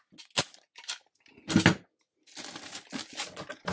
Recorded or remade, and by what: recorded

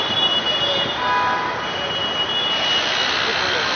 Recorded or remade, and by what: recorded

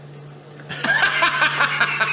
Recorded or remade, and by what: recorded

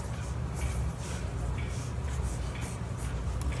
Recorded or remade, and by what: recorded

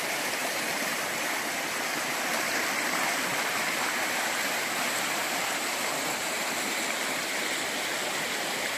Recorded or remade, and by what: remade, vocoder, BigVGAN v2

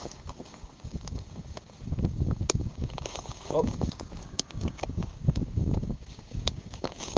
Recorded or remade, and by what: remade, codec, DAC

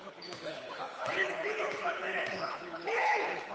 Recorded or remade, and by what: remade, codec, HILCodec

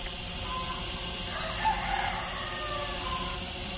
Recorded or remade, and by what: recorded